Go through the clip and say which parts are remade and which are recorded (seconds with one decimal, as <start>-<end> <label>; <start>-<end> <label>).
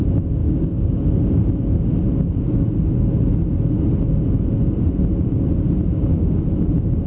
0.0-0.4 recorded; 0.4-1.0 remade; 1.0-5.9 recorded; 5.9-6.4 remade; 6.4-7.1 recorded